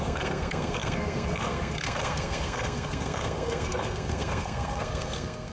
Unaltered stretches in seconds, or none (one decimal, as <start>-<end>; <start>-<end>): none